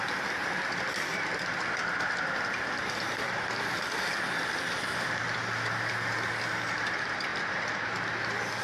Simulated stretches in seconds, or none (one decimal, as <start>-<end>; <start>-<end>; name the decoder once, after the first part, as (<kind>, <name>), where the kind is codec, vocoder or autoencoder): 0.0-5.4 (vocoder, BigVGAN v2); 6.8-7.3